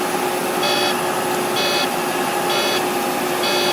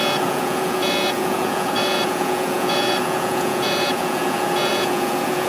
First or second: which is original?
first